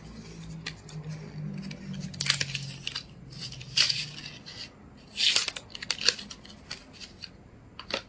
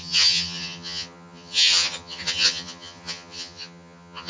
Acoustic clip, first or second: first